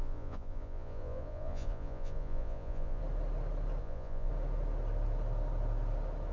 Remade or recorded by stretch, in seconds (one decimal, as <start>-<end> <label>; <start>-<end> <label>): 0.0-3.0 remade; 3.0-3.8 recorded; 3.8-4.3 remade; 4.3-6.3 recorded